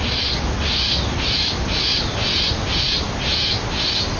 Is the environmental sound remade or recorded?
recorded